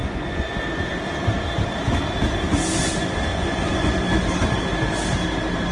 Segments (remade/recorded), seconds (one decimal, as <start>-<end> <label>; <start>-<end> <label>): 0.0-0.6 remade; 0.6-3.3 recorded; 3.3-4.0 remade; 4.0-5.7 recorded